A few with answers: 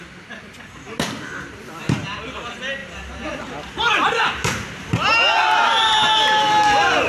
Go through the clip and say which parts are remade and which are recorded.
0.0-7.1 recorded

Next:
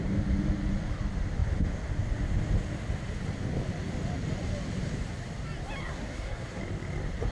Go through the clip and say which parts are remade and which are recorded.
0.0-5.8 recorded; 5.8-6.6 remade; 6.6-7.3 recorded

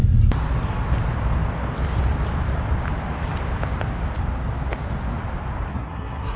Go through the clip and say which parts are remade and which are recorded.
0.0-5.7 recorded; 5.7-6.4 remade

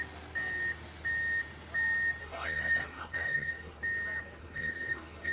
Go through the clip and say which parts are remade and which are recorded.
0.0-2.2 recorded; 2.2-3.8 remade; 3.8-4.4 recorded; 4.4-5.3 remade

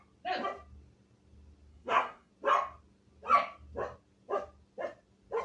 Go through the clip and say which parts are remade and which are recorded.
0.0-1.7 recorded; 1.7-2.3 remade; 2.3-5.4 recorded

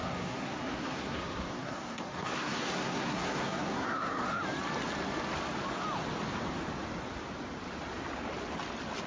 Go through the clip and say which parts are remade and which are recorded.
0.0-4.4 remade; 4.4-9.1 recorded